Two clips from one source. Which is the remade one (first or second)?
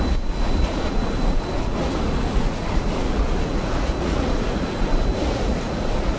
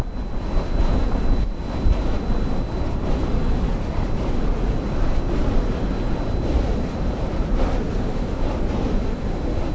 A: first